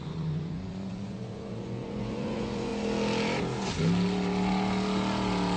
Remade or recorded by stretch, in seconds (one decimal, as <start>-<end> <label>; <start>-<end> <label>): 0.0-2.7 remade; 2.7-5.6 recorded